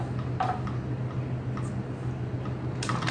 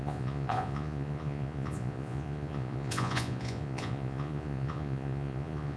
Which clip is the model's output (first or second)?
second